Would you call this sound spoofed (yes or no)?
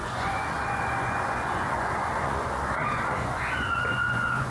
yes